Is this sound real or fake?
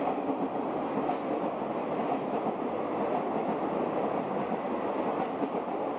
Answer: real